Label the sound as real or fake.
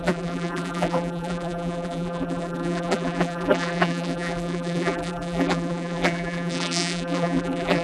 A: fake